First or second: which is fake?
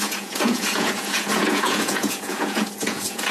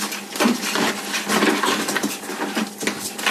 first